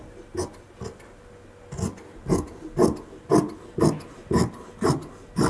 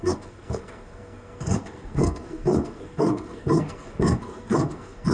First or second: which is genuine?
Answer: first